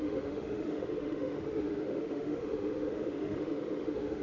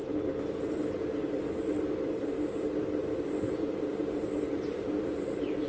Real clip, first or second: second